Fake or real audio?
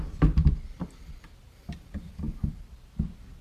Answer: real